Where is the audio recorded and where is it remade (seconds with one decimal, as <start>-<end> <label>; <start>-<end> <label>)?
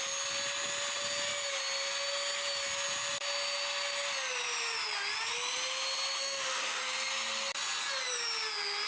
0.0-6.2 recorded; 6.2-6.8 remade; 6.8-8.9 recorded